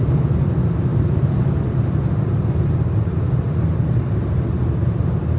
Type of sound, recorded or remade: recorded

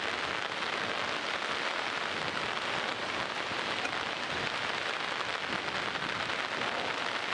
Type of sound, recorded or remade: recorded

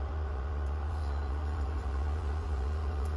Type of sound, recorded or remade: remade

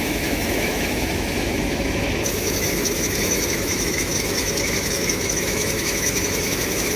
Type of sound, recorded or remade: remade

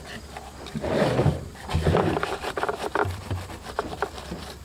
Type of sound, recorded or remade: remade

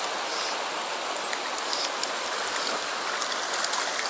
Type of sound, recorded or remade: recorded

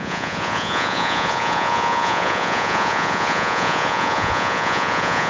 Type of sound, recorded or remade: remade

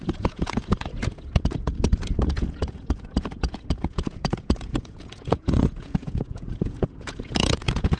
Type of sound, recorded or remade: remade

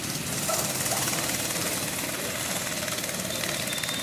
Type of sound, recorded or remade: recorded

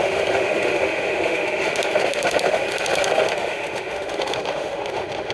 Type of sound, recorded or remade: remade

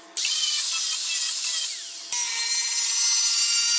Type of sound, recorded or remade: recorded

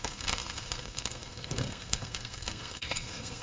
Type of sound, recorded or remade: remade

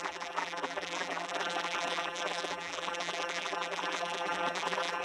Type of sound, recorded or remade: remade